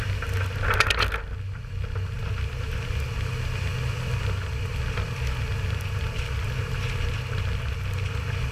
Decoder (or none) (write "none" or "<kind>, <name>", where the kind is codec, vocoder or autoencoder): none